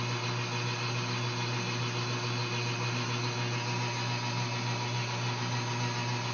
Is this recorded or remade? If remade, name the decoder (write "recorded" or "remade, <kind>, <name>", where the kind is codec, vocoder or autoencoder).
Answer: recorded